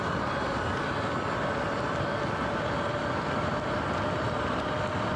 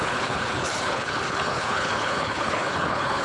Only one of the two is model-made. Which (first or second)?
second